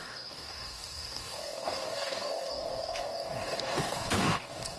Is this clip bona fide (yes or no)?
no